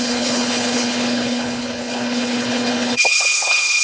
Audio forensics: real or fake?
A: fake